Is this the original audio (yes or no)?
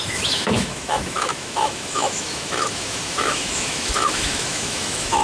no